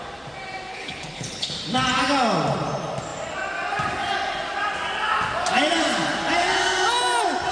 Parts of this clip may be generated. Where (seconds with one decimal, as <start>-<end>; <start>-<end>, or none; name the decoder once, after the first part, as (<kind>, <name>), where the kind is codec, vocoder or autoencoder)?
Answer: 0.7-1.5 (codec, HILCodec)